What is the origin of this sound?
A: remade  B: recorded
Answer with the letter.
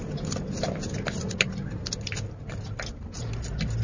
B